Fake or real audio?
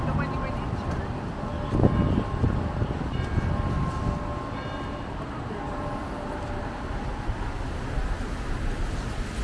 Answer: real